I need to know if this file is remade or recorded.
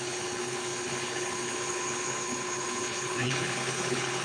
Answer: remade